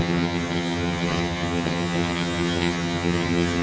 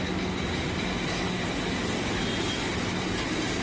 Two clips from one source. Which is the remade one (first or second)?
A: first